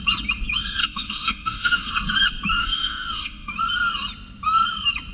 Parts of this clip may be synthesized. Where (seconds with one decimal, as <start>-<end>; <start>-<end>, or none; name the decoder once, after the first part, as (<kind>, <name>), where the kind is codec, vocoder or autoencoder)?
0.8-1.9 (autoencoder, DAC-VAE); 2.6-3.5